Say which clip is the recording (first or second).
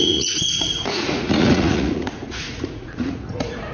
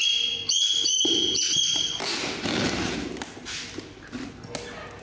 second